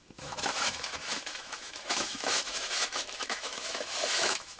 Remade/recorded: remade